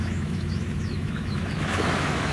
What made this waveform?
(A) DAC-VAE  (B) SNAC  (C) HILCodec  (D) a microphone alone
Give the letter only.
A